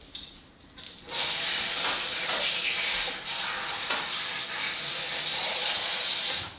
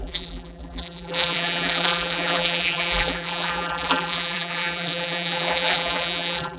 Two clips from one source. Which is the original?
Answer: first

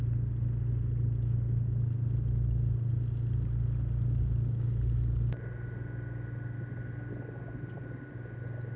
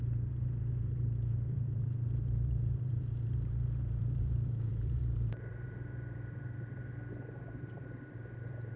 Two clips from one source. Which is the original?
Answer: first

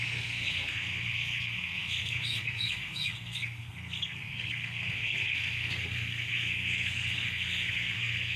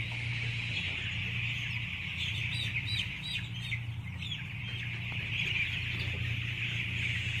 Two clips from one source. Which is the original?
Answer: second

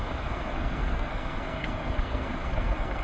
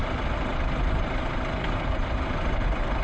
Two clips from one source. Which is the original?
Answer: second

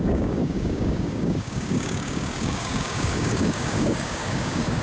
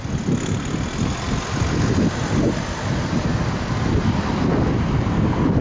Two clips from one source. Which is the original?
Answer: second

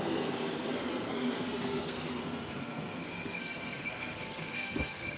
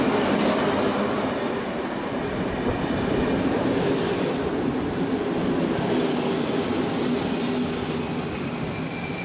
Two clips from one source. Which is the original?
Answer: second